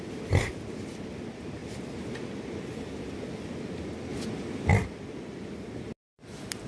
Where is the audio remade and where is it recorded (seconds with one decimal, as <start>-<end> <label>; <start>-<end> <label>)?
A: 0.0-6.7 recorded